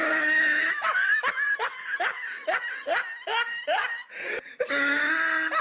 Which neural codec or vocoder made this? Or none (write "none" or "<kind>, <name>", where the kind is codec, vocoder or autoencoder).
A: none